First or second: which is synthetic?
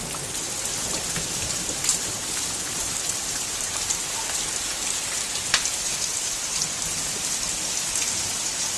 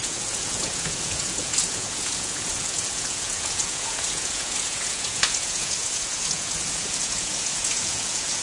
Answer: second